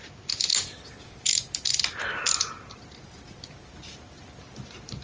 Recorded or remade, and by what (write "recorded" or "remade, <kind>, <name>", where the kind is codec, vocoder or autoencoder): recorded